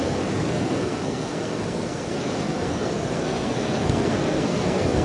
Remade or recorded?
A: remade